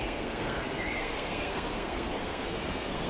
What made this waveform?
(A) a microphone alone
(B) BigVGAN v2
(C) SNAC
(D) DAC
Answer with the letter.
C